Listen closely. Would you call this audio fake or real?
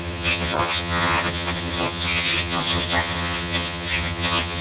fake